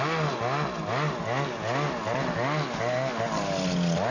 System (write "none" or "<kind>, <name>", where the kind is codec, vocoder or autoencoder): none